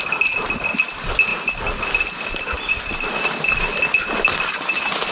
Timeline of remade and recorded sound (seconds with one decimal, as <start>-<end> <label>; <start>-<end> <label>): 0.0-5.1 recorded